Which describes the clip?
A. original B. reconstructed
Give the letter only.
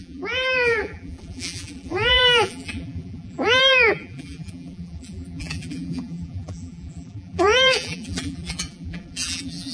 B